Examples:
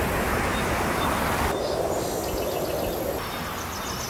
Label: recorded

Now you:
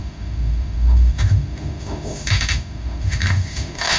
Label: remade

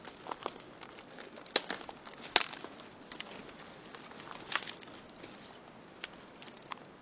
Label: recorded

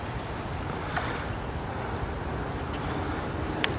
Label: recorded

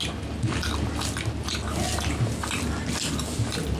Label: recorded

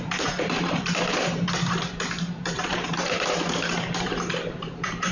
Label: remade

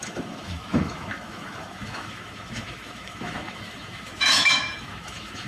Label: remade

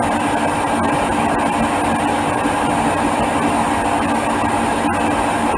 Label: recorded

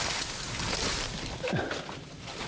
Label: recorded